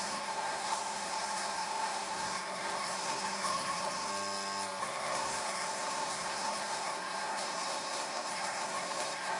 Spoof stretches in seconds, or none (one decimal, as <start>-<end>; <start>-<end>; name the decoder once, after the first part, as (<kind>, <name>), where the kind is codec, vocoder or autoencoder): 0.0-4.1 (codec, SNAC); 4.8-9.4